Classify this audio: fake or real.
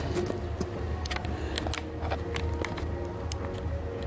real